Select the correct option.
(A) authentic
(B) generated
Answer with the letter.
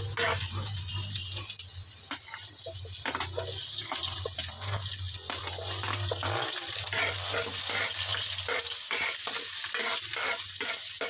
A